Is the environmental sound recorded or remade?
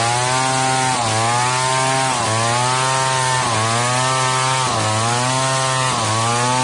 recorded